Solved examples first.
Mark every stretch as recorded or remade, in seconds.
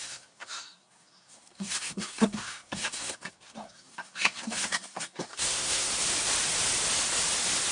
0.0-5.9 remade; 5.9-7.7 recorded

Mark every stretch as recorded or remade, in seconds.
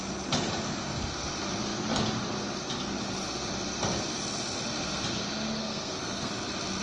0.0-5.6 recorded; 5.6-6.3 remade; 6.3-6.8 recorded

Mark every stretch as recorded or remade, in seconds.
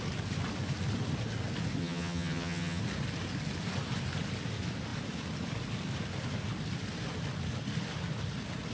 0.0-1.8 recorded; 1.8-2.8 remade; 2.8-8.7 recorded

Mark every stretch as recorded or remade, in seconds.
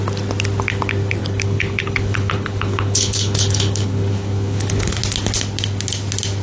0.0-1.2 recorded; 1.2-5.0 remade; 5.0-6.4 recorded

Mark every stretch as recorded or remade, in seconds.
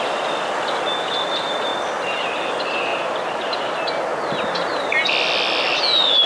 0.0-2.9 recorded; 2.9-3.6 remade; 3.6-6.3 recorded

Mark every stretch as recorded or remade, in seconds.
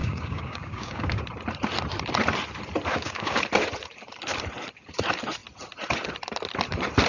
0.0-1.2 remade; 1.2-2.9 recorded; 2.9-3.4 remade; 3.4-7.1 recorded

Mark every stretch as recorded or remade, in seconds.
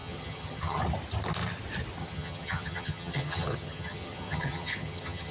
0.0-0.8 remade; 0.8-2.0 recorded; 2.0-5.3 remade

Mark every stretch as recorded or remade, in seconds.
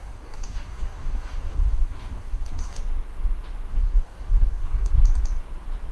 0.0-2.8 remade; 2.8-3.7 recorded; 3.7-4.9 remade; 4.9-5.9 recorded